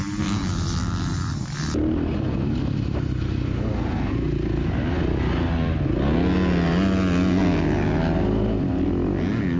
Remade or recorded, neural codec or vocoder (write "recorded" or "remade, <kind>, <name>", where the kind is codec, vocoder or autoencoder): recorded